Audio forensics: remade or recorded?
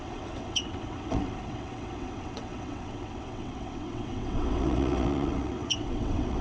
remade